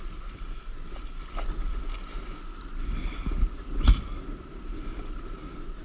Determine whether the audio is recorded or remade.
recorded